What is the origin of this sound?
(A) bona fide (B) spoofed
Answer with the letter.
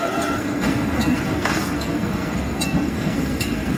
B